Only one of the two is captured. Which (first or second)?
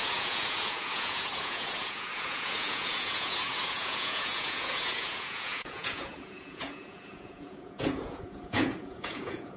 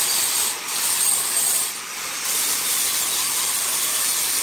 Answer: second